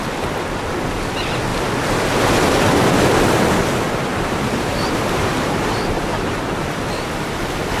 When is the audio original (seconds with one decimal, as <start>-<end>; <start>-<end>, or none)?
0.0-4.1; 6.5-7.8